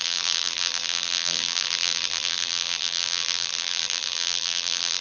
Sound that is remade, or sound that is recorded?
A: remade